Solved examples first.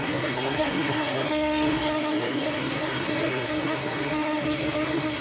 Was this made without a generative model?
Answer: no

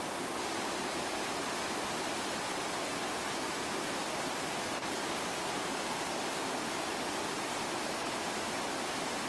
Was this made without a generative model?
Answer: yes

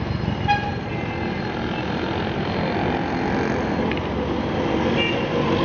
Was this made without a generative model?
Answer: yes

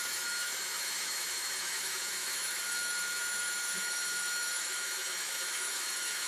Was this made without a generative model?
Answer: no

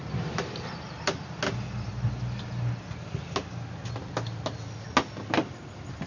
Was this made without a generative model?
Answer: yes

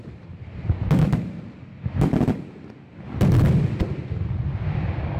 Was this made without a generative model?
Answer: yes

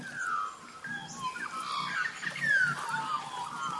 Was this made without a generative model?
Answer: yes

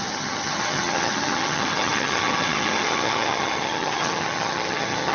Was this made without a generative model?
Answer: no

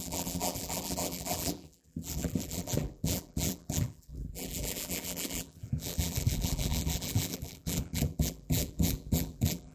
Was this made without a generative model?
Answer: no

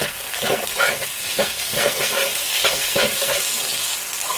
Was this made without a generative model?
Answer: no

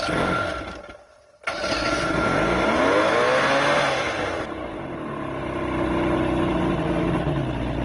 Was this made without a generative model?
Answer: yes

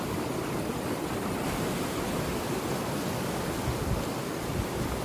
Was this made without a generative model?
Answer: yes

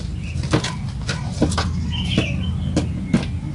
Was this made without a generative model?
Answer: yes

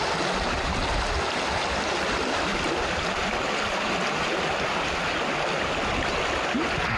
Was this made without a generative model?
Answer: yes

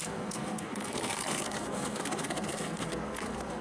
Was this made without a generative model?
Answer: no